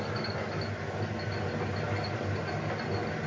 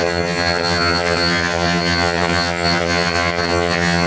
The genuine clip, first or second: first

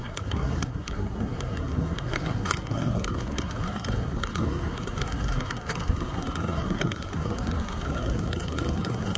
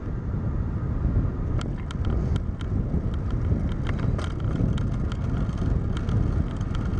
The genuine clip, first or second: second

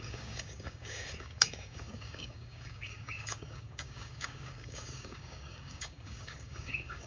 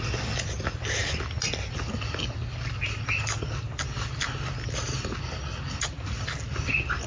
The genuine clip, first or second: second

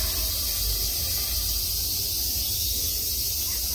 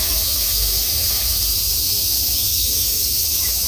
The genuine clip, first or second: first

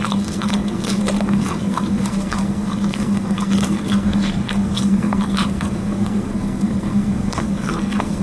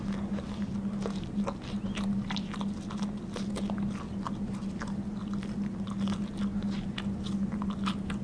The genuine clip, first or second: second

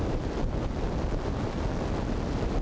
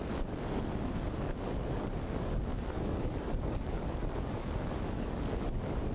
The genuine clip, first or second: first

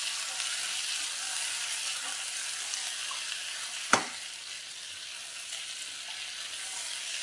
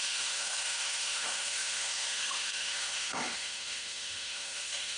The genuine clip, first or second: first